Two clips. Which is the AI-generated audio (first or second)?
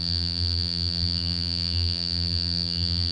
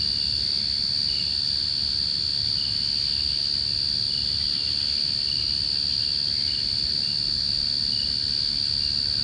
first